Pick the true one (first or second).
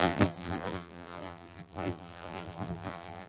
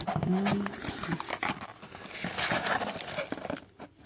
second